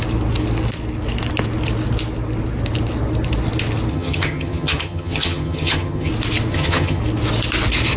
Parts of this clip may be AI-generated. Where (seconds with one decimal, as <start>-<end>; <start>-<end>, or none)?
3.9-6.1; 6.5-7.0